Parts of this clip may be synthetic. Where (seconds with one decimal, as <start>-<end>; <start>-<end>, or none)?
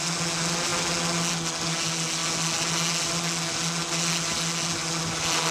none